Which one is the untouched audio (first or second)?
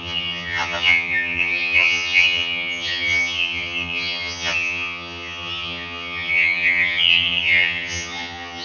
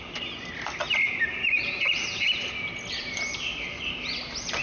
second